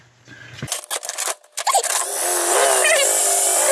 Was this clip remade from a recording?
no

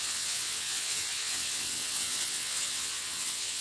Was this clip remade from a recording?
yes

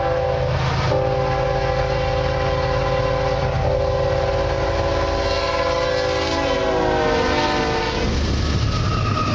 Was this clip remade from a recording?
no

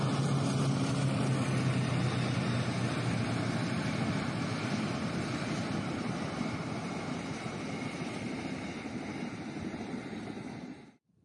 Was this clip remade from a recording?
no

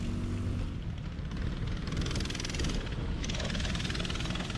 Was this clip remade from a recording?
no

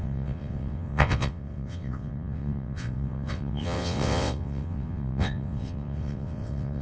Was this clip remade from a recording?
yes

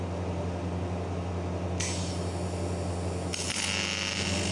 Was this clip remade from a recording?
no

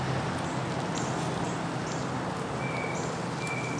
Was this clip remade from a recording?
no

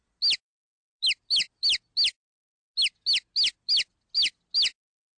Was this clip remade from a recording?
no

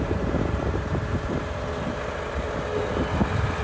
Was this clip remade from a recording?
no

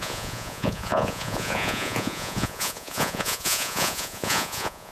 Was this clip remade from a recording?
yes